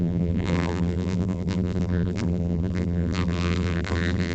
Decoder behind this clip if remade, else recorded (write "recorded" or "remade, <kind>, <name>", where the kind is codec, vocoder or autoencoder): remade, vocoder, BigVGAN v2